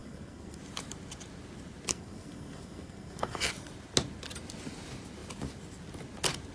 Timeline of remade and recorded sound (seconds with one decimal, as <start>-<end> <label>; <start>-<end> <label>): 0.0-0.6 remade; 0.6-1.9 recorded; 1.9-3.5 remade; 3.5-6.5 recorded